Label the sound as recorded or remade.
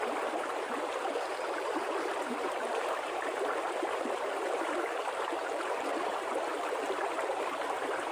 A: remade